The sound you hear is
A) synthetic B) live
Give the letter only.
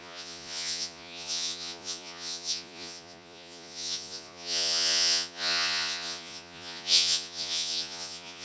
A